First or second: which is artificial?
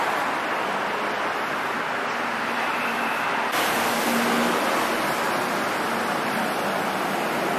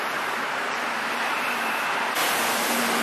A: second